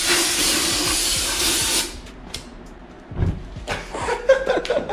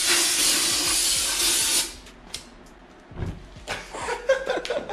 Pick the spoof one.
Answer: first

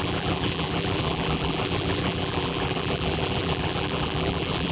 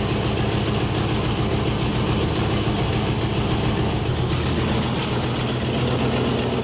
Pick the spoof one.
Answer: first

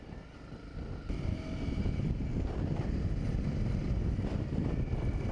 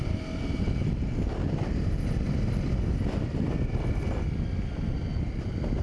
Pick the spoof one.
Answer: first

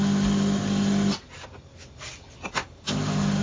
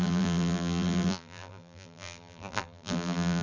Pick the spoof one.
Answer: second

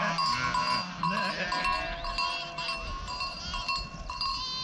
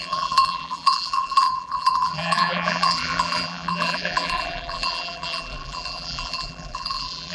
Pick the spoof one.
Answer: second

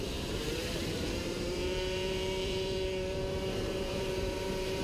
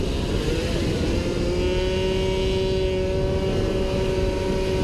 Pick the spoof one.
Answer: first